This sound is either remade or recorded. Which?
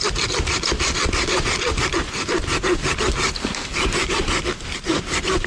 recorded